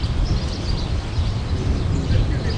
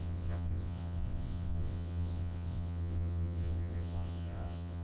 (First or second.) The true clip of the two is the first